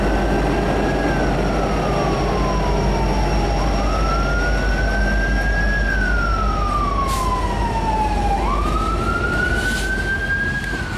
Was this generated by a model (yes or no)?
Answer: no